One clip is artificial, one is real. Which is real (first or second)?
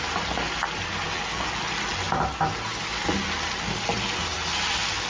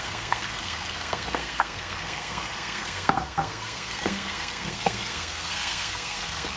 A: first